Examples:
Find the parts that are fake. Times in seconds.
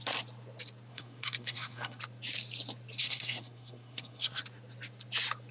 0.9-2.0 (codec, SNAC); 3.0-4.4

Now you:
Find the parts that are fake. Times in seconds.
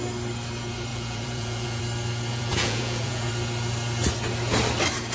0.9-1.8 (vocoder, Vocos); 2.3-3.3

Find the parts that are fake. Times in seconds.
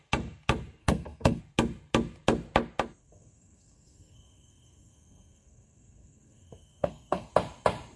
0.8-1.4 (codec, SNAC); 3.0-7.3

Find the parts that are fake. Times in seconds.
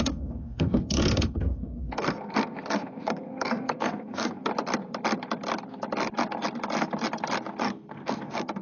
0.0-4.5 (codec, SNAC); 7.6-8.6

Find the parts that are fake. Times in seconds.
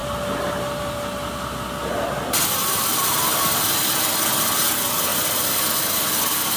2.6-4.1 (vocoder, BigVGAN v2); 5.1-6.0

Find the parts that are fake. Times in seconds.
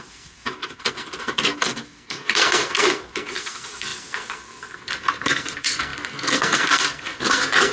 0.0-7.7 (codec, SNAC)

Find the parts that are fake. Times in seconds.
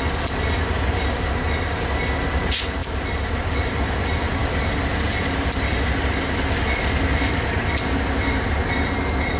none